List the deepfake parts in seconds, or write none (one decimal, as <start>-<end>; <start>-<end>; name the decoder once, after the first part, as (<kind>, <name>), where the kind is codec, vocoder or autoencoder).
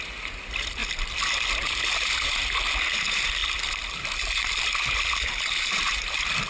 none